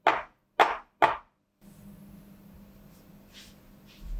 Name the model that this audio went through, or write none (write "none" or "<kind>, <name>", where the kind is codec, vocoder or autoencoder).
none